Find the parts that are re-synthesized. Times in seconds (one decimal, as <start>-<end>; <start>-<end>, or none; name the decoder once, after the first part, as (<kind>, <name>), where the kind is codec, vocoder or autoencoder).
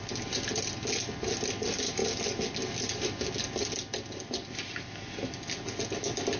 none